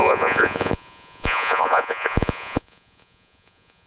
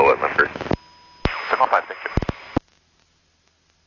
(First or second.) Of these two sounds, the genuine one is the second